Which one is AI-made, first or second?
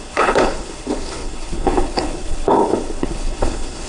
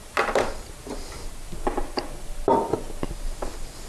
first